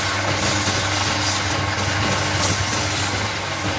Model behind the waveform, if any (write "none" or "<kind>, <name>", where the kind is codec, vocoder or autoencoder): none